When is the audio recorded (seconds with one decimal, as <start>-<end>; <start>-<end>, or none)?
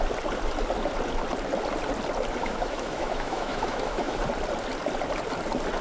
0.0-2.4; 4.2-5.8